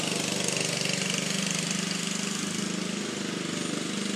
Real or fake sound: real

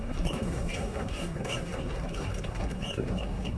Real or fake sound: fake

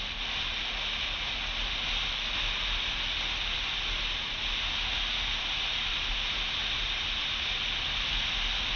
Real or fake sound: real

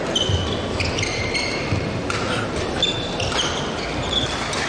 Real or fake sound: real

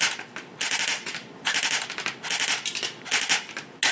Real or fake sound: real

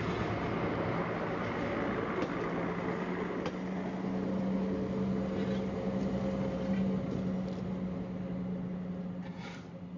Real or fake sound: real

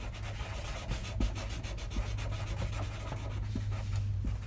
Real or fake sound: real